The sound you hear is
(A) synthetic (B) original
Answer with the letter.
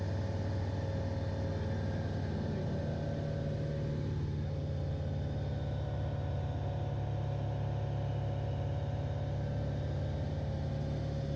B